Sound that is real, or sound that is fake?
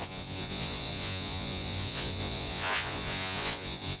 fake